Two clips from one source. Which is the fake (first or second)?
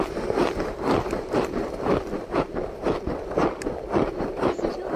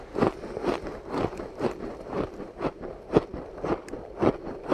first